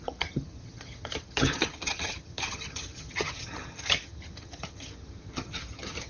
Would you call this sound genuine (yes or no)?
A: no